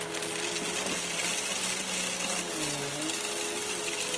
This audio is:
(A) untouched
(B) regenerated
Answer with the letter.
A